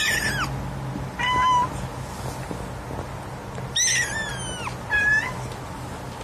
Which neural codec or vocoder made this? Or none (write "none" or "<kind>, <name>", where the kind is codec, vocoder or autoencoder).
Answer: none